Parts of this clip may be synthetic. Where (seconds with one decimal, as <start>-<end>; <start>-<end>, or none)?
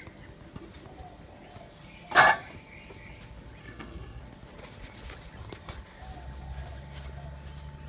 3.6-4.2